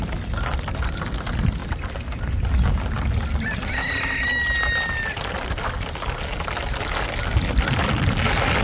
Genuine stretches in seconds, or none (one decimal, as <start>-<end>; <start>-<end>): 0.0-8.6